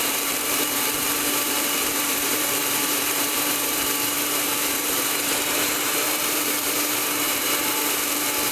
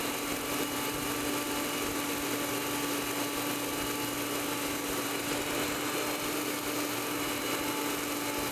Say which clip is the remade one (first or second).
first